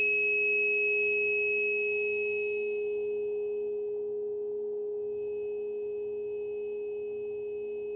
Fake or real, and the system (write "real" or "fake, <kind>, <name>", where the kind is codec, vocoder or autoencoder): real